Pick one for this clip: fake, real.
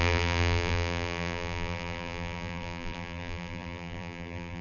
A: fake